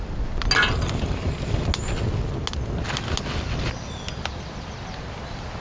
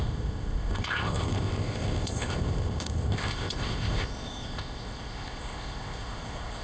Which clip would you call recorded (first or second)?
first